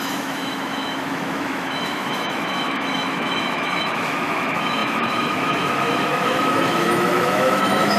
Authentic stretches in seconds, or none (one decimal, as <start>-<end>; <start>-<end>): none